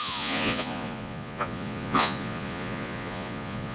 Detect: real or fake fake